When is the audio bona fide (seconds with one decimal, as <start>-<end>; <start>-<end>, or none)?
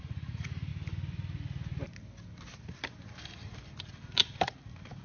0.7-3.2